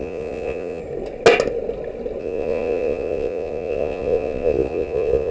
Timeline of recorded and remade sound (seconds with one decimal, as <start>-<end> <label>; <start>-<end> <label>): 0.0-0.8 remade; 0.8-2.2 recorded; 2.2-5.3 remade